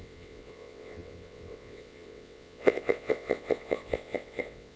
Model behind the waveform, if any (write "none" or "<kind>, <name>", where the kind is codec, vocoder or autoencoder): vocoder, WaveNeXt